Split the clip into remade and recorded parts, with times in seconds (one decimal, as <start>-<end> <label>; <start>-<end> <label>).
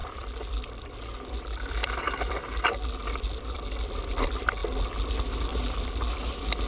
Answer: 0.0-2.4 remade; 2.4-3.0 recorded; 3.0-4.1 remade; 4.1-5.5 recorded; 5.5-6.1 remade; 6.1-6.7 recorded